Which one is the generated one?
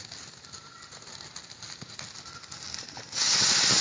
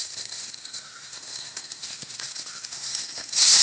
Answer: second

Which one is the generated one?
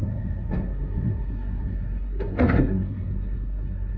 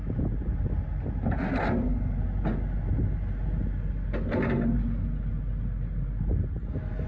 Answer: first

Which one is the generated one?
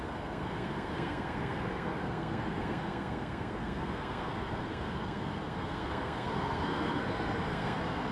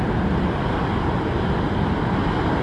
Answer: first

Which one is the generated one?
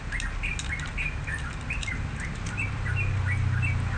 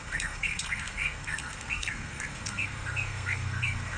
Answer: second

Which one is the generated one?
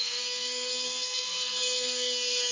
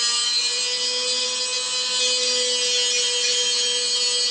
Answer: first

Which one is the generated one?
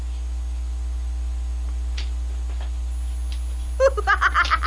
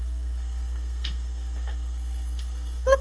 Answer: second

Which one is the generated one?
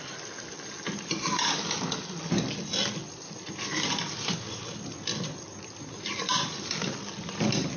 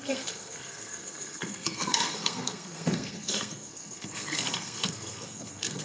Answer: second